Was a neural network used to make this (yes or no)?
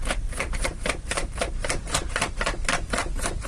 yes